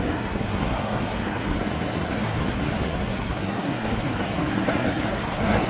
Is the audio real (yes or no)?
no